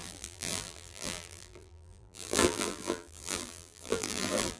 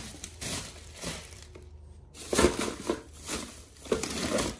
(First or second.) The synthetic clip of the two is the first